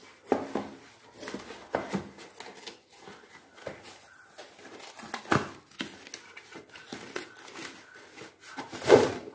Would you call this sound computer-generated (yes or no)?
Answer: no